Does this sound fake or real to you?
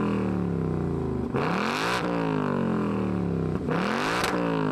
real